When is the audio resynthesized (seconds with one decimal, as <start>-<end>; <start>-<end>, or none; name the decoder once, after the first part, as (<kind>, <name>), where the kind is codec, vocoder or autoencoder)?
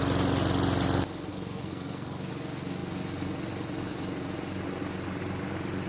1.3-2.3 (codec, SNAC)